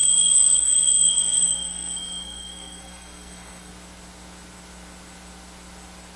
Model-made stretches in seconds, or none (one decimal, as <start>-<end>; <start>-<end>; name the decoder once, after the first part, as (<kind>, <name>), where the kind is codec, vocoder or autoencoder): 0.0-3.7 (codec, SNAC)